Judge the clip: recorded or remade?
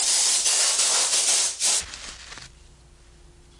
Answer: recorded